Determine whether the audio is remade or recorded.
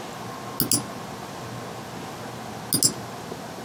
recorded